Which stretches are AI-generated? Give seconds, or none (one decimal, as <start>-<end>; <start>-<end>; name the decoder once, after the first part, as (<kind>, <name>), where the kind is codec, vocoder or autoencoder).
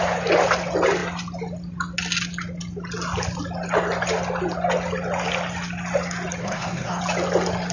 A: 6.4-7.0 (codec, SNAC)